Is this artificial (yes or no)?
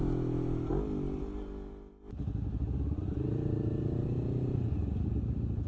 no